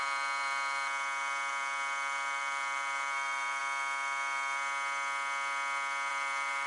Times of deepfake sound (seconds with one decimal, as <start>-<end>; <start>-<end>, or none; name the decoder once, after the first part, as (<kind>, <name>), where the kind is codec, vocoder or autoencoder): 0.0-3.6 (vocoder, BigVGAN v2); 6.1-6.7